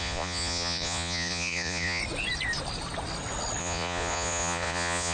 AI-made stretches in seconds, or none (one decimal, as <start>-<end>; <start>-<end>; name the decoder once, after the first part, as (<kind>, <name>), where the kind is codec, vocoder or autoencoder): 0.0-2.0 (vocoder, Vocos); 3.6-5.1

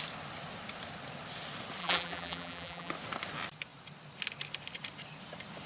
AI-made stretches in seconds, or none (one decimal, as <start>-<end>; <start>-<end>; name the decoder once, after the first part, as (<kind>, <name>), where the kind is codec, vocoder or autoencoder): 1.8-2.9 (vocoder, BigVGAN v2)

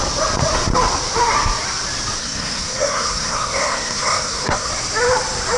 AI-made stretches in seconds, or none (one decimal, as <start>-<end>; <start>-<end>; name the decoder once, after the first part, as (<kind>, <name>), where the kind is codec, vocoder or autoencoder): 2.2-4.7 (codec, SNAC)